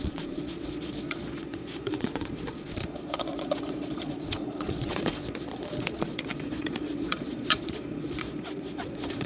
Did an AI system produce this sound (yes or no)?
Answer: yes